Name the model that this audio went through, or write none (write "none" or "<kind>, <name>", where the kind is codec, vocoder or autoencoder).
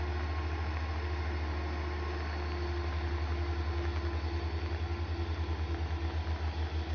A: none